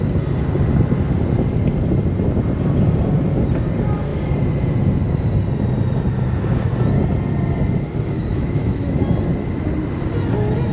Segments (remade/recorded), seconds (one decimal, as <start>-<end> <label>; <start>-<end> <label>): 0.0-8.3 recorded; 8.3-9.0 remade; 9.0-10.7 recorded